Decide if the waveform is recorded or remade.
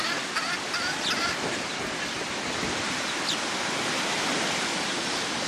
recorded